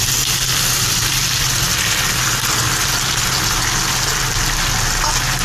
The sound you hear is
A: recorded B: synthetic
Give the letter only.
A